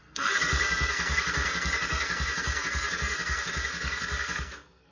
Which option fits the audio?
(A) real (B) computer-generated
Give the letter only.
B